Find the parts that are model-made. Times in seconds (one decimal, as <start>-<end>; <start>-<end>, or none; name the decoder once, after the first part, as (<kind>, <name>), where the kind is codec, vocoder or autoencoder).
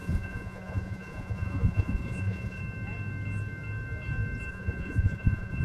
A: 0.0-2.6 (vocoder, Vocos); 4.5-5.6